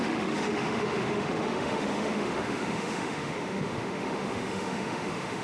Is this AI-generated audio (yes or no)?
yes